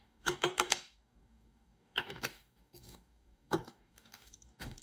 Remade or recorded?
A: remade